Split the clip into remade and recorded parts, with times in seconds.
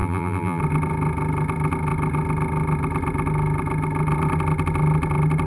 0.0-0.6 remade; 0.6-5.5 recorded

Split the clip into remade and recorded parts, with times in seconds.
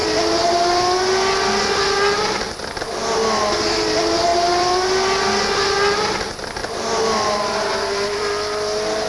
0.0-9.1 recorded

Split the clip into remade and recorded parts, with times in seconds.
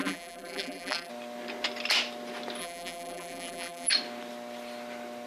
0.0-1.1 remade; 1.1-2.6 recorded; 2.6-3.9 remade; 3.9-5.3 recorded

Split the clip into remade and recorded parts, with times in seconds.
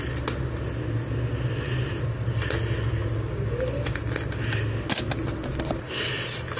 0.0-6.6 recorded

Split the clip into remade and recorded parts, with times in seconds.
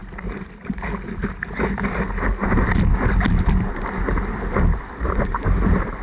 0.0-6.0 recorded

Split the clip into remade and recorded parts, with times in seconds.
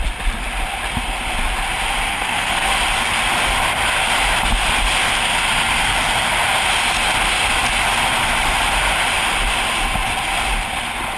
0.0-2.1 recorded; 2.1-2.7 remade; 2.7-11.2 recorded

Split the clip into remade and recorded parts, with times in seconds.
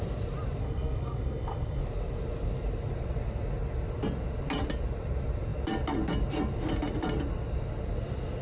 0.0-0.6 recorded; 0.6-1.8 remade; 1.8-8.4 recorded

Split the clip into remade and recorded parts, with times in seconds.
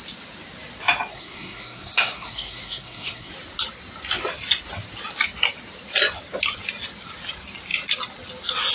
0.0-1.1 recorded; 1.1-3.3 remade; 3.3-8.7 recorded